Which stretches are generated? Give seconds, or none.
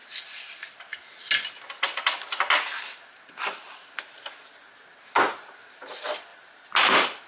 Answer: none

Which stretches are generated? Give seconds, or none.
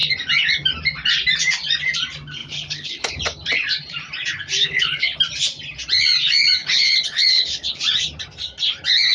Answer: 2.4-3.1; 4.6-5.2; 6.6-7.8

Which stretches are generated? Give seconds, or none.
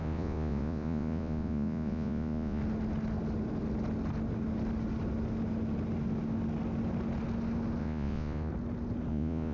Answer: 0.0-2.6; 7.8-8.5; 9.1-9.5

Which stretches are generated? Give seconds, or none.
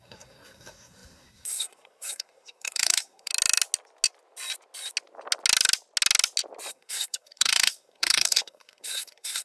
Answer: 0.0-3.3; 6.7-9.4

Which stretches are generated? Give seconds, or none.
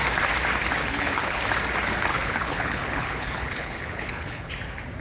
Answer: 0.8-1.4; 2.1-4.5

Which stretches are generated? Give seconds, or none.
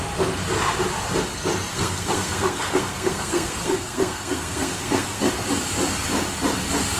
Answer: 1.7-5.3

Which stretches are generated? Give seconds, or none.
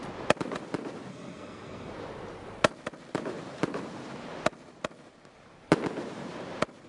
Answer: 1.1-1.9